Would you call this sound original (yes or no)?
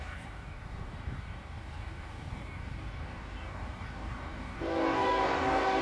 no